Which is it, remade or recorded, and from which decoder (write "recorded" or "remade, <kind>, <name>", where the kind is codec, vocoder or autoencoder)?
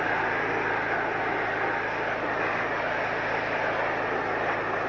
recorded